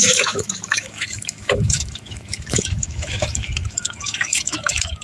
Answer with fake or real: fake